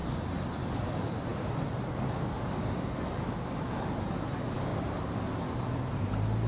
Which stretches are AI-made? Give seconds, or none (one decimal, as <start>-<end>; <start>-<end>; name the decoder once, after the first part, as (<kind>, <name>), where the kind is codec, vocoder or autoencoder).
4.7-5.2 (vocoder, BigVGAN v2)

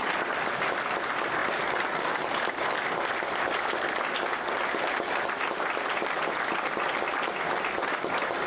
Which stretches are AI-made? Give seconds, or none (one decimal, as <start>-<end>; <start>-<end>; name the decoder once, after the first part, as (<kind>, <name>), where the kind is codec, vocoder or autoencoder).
none

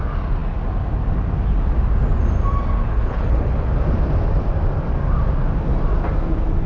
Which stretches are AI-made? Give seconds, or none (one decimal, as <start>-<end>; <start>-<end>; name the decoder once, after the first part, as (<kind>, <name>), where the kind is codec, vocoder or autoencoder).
2.9-3.7 (codec, HILCodec)

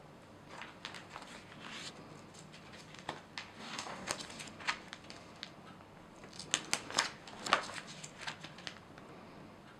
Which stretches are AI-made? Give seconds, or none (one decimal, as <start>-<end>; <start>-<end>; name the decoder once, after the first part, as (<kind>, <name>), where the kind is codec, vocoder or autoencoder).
3.6-4.1 (codec, DAC)

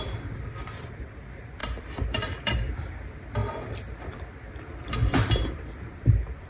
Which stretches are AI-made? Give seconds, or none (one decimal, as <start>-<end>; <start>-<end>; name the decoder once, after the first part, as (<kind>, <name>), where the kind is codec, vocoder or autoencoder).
0.0-3.4 (vocoder, BigVGAN v2); 4.5-6.5

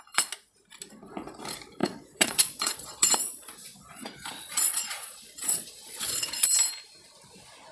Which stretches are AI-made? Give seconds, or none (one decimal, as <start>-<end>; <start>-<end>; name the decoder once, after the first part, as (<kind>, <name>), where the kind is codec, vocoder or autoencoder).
1.8-6.4 (vocoder, Vocos)

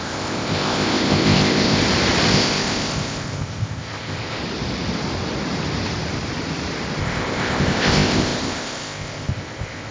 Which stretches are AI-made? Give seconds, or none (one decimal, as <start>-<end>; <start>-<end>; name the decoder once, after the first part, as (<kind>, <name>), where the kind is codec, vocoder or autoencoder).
0.0-1.8 (codec, ZipCodec); 2.3-4.4; 7.0-9.9

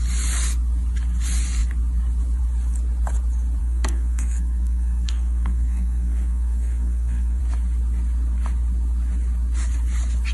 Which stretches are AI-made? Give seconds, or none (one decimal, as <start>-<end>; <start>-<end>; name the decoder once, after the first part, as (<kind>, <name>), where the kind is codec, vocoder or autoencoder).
3.6-7.4 (codec, SNAC)